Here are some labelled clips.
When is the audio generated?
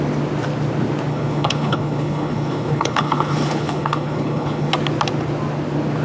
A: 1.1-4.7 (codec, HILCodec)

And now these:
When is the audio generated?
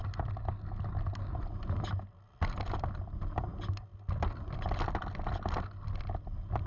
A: none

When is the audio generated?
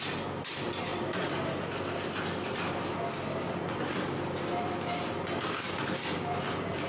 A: none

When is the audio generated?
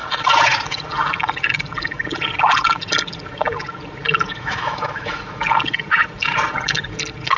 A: 4.3-5.4 (autoencoder, DAC-VAE)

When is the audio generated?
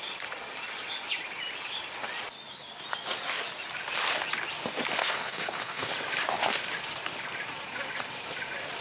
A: 5.0-5.9 (codec, SNAC)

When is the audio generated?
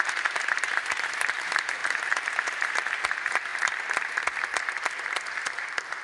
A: 0.0-3.5 (vocoder, BigVGAN v2)